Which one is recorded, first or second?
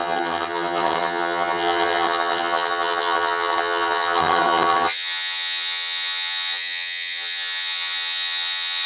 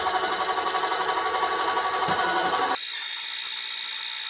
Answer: second